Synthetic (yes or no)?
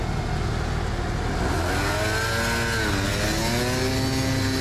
no